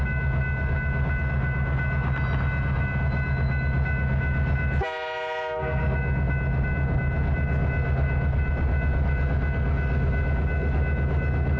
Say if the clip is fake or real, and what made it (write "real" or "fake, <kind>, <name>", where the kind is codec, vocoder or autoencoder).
real